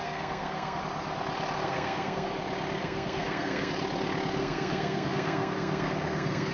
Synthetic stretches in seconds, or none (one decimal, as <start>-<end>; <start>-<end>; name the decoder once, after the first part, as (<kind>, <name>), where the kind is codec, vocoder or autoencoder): 0.0-0.8 (codec, SNAC); 1.6-2.3; 2.8-3.7; 4.4-6.5